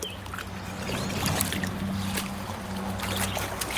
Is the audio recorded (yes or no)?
yes